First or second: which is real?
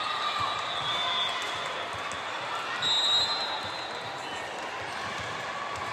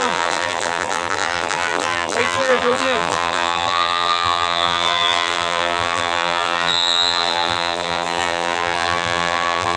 first